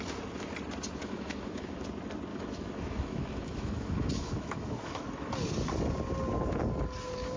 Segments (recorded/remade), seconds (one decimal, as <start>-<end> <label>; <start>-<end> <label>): 0.0-1.0 recorded; 1.0-1.8 remade; 1.8-2.3 recorded; 2.3-5.1 remade; 5.1-7.4 recorded

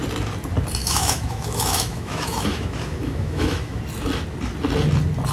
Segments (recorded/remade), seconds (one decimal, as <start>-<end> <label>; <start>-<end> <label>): 0.0-0.8 recorded; 0.8-3.8 remade; 3.8-5.3 recorded

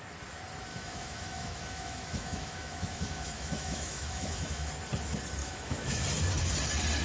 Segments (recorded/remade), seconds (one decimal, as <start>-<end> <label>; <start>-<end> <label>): 0.0-0.7 recorded; 0.7-4.7 remade; 4.7-5.4 recorded; 5.4-6.0 remade; 6.0-7.0 recorded

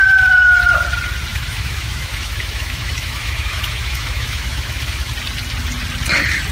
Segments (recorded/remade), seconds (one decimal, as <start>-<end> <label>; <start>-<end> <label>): 0.0-1.3 recorded; 1.3-5.1 remade; 5.1-6.5 recorded

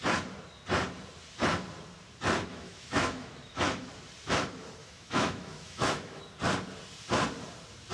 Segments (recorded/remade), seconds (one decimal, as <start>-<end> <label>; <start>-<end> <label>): 0.0-2.5 recorded; 2.5-3.9 remade; 3.9-4.8 recorded; 4.8-6.2 remade; 6.2-7.9 recorded

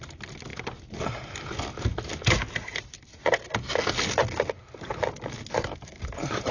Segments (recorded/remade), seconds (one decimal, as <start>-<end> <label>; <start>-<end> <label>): 0.0-5.5 recorded; 5.5-6.0 remade; 6.0-6.5 recorded